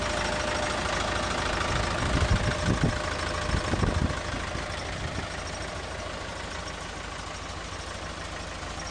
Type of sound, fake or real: real